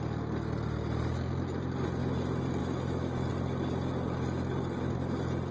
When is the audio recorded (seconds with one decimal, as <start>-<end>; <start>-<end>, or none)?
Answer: 0.0-2.6; 3.3-5.5